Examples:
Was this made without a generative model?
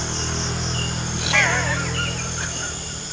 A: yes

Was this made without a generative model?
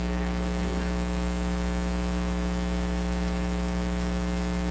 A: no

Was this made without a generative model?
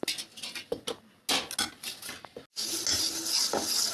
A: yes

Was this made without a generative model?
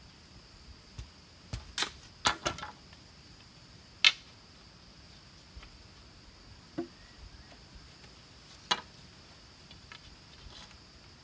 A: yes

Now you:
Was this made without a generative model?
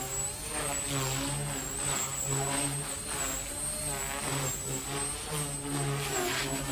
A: yes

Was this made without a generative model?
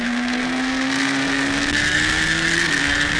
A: no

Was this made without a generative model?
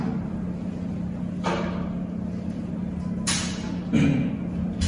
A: yes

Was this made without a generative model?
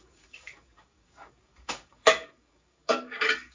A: no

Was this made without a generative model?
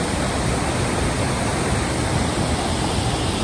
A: yes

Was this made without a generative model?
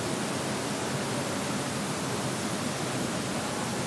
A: yes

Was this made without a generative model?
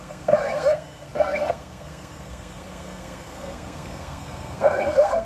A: no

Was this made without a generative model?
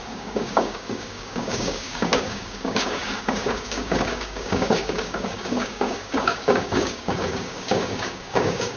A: no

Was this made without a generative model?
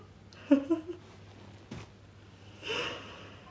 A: yes